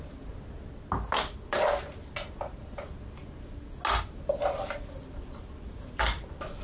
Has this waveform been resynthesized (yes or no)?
no